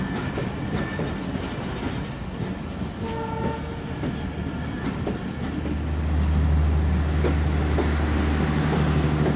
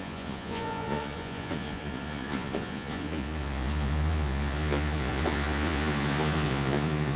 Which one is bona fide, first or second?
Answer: first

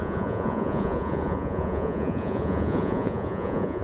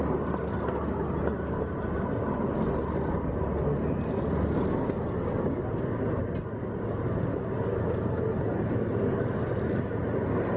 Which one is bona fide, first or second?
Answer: second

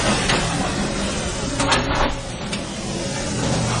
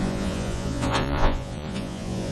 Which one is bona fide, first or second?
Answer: first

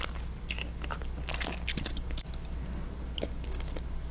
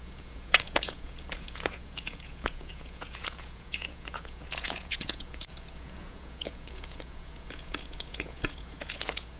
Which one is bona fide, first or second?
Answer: first